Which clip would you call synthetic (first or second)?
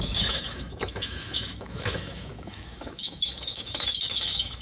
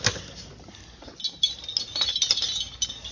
first